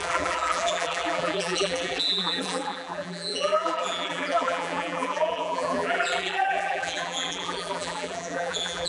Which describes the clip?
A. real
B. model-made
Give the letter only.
B